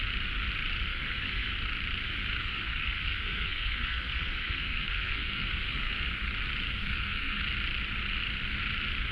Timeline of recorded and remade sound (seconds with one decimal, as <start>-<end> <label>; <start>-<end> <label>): 0.0-0.9 recorded; 0.9-1.5 remade; 1.5-2.4 recorded; 2.4-5.9 remade; 5.9-6.8 recorded; 6.8-7.4 remade; 7.4-9.1 recorded